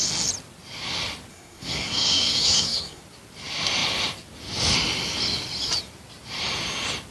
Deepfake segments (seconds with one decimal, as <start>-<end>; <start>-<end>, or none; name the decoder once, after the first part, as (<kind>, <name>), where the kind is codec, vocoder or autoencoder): 1.3-3.0 (codec, SNAC)